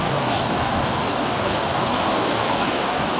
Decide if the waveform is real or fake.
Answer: fake